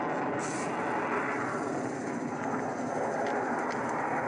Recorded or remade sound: recorded